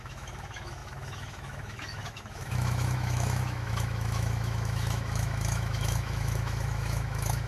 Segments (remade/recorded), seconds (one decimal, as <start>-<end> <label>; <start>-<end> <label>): 0.0-7.5 remade